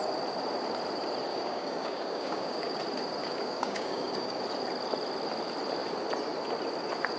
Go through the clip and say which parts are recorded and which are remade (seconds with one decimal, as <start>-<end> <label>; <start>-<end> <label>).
0.0-1.3 recorded; 1.3-2.8 remade; 2.8-3.2 recorded; 3.2-4.4 remade; 4.4-7.2 recorded